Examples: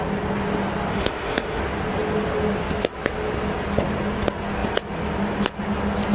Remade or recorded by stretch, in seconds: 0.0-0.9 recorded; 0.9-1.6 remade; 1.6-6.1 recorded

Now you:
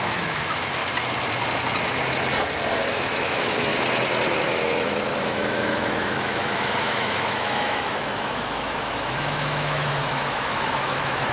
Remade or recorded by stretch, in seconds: 0.0-0.8 remade; 0.8-2.9 recorded; 2.9-3.7 remade; 3.7-4.4 recorded; 4.4-11.3 remade

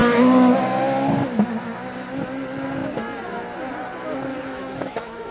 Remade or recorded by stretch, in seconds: 0.0-4.3 recorded; 4.3-5.3 remade

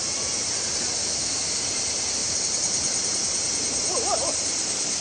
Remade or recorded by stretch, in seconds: 0.0-1.0 recorded; 1.0-1.5 remade; 1.5-5.0 recorded

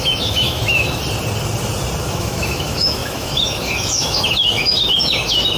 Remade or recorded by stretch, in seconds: 0.0-1.0 remade; 1.0-2.0 recorded; 2.0-5.6 remade

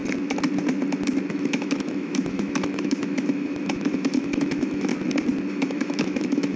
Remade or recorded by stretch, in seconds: 0.0-1.3 recorded; 1.3-4.9 remade; 4.9-5.5 recorded; 5.5-6.6 remade